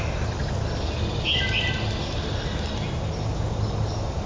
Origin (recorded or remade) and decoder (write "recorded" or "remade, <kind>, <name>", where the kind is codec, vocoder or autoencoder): recorded